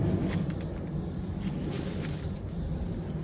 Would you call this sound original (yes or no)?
yes